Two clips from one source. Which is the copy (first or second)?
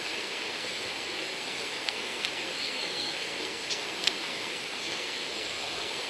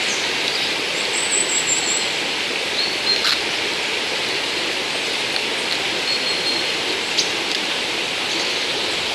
first